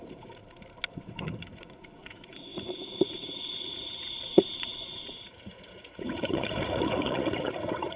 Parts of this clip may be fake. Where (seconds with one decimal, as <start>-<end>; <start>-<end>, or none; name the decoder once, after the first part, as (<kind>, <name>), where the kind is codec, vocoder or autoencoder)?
0.0-0.4 (vocoder, Vocos); 0.9-8.0

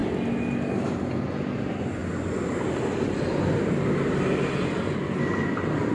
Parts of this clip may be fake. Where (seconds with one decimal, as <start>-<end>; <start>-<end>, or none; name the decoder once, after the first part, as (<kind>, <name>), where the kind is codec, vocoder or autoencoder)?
none

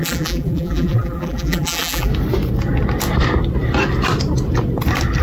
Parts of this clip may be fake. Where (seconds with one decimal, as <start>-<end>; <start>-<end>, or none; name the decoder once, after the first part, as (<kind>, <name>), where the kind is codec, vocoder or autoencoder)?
0.0-2.1 (vocoder, BigVGAN v2)

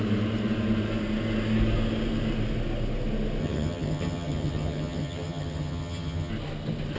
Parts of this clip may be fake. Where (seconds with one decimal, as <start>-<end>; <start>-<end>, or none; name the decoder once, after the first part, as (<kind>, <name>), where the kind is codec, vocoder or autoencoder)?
3.4-6.3 (vocoder, HiFi-GAN)

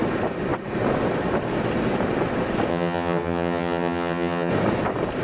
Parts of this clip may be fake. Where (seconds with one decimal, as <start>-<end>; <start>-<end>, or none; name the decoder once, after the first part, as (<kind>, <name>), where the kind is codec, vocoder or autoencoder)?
2.7-4.5 (vocoder, HiFi-GAN)